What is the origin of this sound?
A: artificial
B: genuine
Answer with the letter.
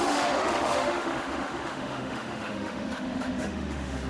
A